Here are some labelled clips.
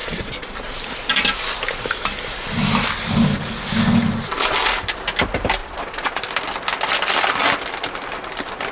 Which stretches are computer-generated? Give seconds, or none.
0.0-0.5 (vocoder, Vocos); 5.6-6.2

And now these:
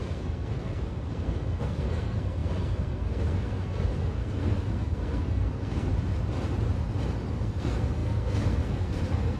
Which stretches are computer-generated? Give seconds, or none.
0.0-5.9 (codec, SNAC); 7.3-9.4

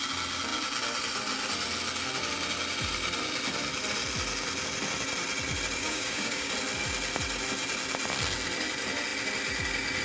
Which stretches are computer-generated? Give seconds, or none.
5.8-6.5 (codec, DAC)

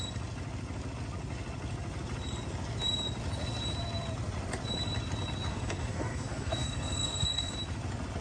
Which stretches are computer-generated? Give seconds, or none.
5.5-7.5 (codec, SNAC)

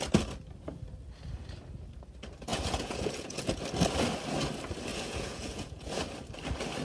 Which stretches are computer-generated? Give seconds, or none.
2.5-3.6 (vocoder, Vocos); 4.9-6.0

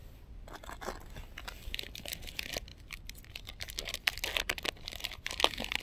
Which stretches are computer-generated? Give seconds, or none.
0.0-0.7 (vocoder, BigVGAN v2)

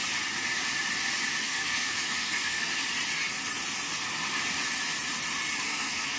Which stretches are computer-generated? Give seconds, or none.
1.4-2.7 (codec, SNAC); 5.6-6.2

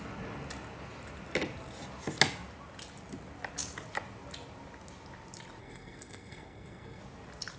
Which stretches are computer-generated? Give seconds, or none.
5.6-7.0 (codec, SNAC)